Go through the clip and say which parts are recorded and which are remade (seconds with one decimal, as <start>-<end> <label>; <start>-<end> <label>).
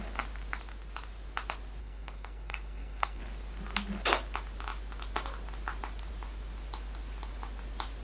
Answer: 0.0-1.8 recorded; 1.8-3.2 remade; 3.2-8.0 recorded